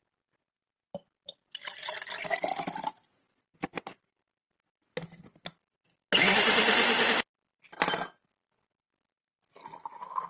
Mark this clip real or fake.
real